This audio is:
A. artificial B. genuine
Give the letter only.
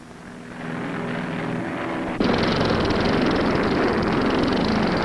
B